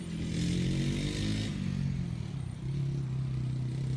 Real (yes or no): yes